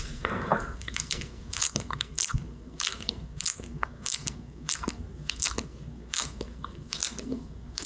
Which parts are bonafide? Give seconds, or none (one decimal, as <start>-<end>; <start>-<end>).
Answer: none